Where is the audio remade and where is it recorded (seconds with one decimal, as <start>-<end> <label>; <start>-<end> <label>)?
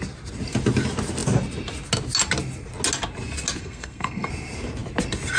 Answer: 0.0-3.6 recorded; 3.6-4.3 remade; 4.3-5.4 recorded